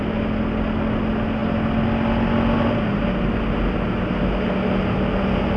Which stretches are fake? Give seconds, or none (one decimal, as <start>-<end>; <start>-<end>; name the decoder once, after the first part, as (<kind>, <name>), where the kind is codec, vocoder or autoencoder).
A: none